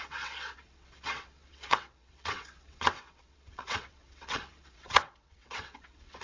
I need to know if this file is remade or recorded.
remade